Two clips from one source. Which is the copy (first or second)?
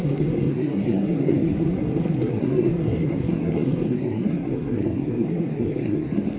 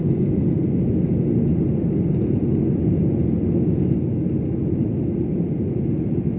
first